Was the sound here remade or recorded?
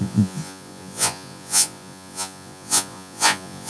remade